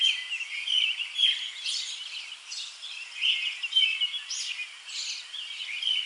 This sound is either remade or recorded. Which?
recorded